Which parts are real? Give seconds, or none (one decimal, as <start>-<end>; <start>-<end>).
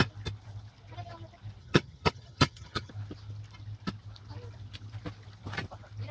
0.0-1.6; 2.9-6.1